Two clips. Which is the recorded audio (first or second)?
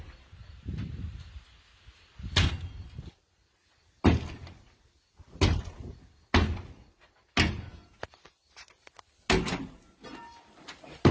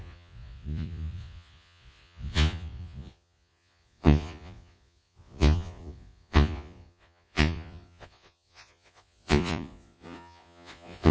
first